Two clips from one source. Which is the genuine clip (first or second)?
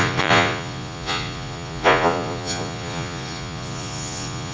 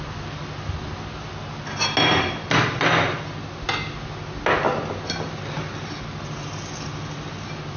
second